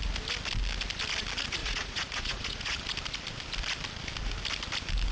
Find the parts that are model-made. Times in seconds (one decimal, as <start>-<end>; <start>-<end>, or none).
1.6-2.8